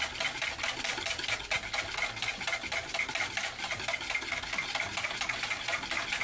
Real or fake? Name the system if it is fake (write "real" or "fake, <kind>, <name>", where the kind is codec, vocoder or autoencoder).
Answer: real